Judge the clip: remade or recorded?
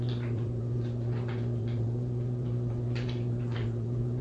remade